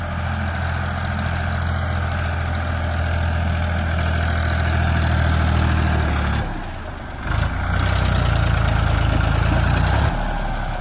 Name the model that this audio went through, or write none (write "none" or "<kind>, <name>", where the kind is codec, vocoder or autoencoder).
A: none